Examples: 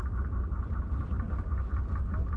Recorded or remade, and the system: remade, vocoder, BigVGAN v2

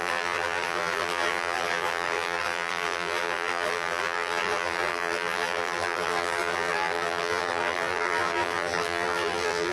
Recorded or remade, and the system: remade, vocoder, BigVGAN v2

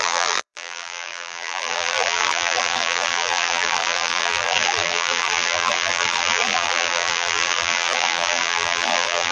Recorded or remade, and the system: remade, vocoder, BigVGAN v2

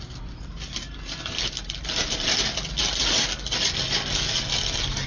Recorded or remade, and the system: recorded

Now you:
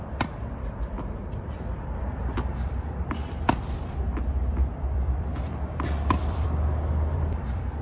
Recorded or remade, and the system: remade, vocoder, BigVGAN v2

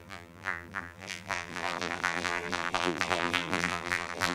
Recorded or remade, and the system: remade, vocoder, BigVGAN v2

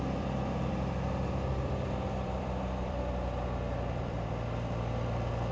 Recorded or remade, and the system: remade, vocoder, BigVGAN v2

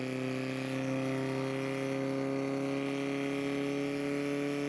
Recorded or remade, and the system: recorded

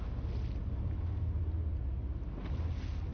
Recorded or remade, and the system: recorded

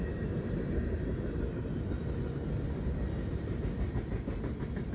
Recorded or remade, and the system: recorded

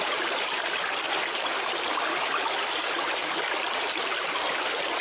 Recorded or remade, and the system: recorded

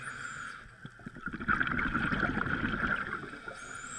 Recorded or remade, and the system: recorded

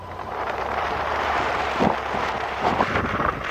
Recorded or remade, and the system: remade, vocoder, BigVGAN v2